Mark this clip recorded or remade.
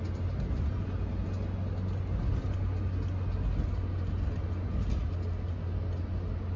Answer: recorded